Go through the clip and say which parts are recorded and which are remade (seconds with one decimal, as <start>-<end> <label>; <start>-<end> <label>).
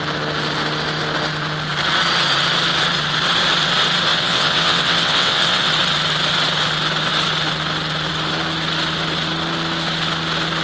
0.0-4.1 recorded; 4.1-5.7 remade; 5.7-10.6 recorded